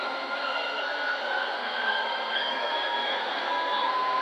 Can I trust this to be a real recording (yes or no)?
no